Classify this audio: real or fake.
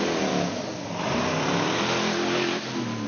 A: real